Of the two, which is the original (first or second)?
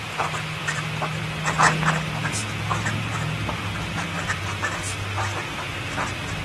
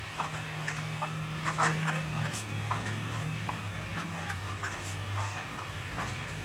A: first